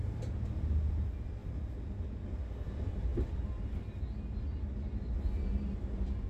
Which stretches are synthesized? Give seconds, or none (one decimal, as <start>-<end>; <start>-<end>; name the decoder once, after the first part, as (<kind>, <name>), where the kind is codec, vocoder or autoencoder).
none